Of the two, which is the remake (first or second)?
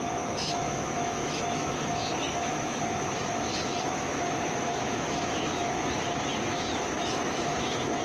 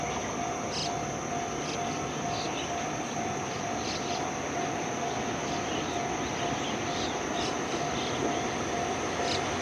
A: first